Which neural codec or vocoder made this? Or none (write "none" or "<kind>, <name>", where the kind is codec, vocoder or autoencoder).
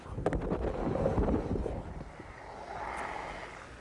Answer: none